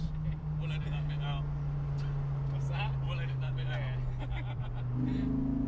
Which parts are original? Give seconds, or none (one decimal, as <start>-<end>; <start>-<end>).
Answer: 0.0-5.7